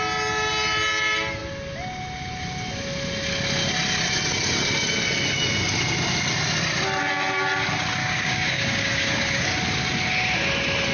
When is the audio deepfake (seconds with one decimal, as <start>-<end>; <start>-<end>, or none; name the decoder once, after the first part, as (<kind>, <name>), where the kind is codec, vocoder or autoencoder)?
8.0-9.4 (codec, DAC)